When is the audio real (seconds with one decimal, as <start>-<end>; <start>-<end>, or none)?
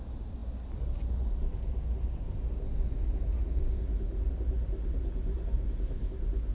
0.0-6.5